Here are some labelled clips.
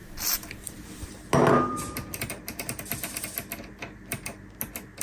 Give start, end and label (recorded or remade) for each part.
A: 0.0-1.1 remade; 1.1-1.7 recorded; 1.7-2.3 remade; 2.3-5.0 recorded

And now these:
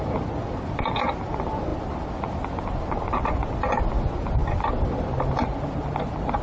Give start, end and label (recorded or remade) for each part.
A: 0.0-6.4 recorded

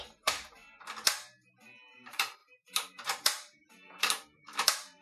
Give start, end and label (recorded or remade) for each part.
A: 0.0-0.6 remade; 0.6-1.9 recorded; 1.9-5.0 remade

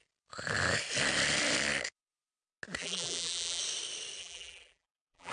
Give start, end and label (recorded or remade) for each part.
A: 0.0-2.8 recorded; 2.8-3.6 remade; 3.6-4.2 recorded; 4.2-5.3 remade

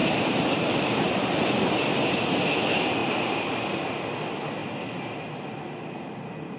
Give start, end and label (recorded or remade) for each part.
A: 0.0-1.3 remade; 1.3-3.0 recorded; 3.0-3.9 remade; 3.9-6.6 recorded

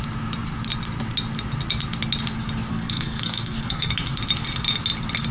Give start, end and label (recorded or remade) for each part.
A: 0.0-2.7 recorded; 2.7-3.9 remade; 3.9-5.3 recorded

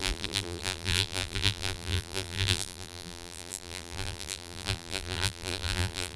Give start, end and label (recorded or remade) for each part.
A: 0.0-6.2 remade

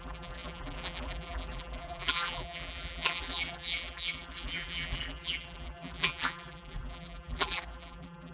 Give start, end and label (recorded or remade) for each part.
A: 0.0-8.3 remade